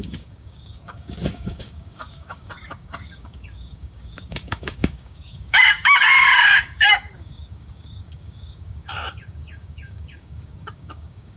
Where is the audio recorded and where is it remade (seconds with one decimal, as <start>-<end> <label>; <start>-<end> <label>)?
0.0-11.4 remade